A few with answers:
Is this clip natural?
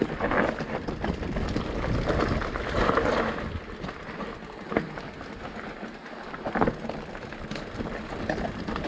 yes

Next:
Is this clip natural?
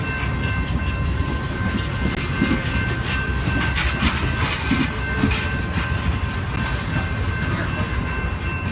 yes